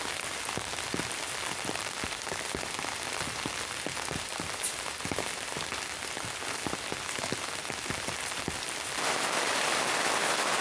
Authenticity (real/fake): real